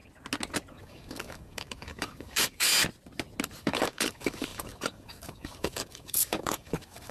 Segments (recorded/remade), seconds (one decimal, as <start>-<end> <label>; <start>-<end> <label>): 0.0-0.8 recorded; 0.8-2.7 remade; 2.7-3.6 recorded; 3.6-7.1 remade